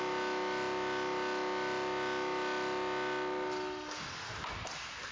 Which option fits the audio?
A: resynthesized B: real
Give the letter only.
B